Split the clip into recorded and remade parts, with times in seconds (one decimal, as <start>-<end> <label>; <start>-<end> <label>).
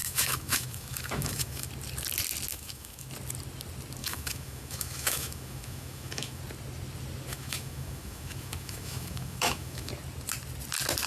0.0-1.7 remade; 1.7-2.5 recorded; 2.5-3.1 remade; 3.1-4.0 recorded; 4.0-6.4 remade; 6.4-7.3 recorded; 7.3-9.9 remade; 9.9-11.1 recorded